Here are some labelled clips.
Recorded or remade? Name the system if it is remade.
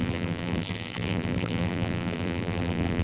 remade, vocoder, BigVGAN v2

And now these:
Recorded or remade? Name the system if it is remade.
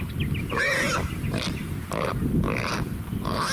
recorded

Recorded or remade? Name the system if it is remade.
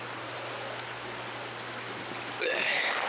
recorded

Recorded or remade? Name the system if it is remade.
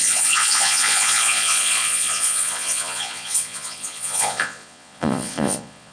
remade, vocoder, Vocos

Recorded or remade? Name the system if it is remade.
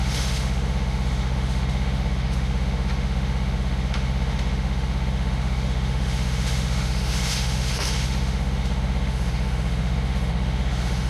remade, autoencoder, DAC-VAE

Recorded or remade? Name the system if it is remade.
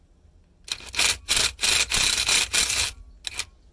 recorded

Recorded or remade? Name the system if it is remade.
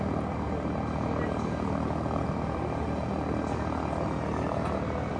recorded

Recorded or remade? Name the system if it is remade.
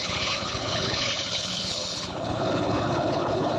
remade, codec, HILCodec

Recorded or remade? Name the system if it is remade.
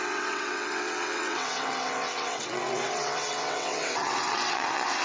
remade, vocoder, WaveNeXt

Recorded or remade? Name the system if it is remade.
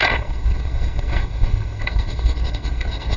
remade, codec, SNAC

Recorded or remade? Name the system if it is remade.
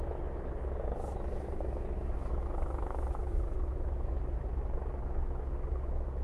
remade, autoencoder, DAC-VAE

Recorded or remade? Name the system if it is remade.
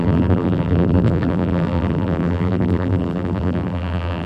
remade, vocoder, BigVGAN v2